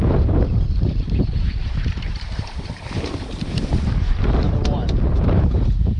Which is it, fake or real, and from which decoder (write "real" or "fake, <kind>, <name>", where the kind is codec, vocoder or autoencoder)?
fake, vocoder, BigVGAN v2